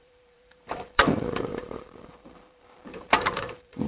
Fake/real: fake